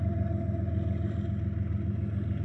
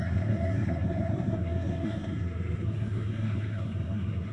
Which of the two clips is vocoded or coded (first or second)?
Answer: second